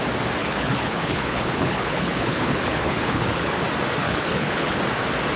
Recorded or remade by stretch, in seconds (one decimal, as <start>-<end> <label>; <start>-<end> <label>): 0.0-0.4 recorded; 0.4-3.6 remade; 3.6-4.0 recorded; 4.0-4.8 remade; 4.8-5.4 recorded